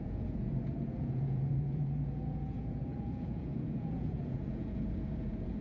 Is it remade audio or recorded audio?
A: remade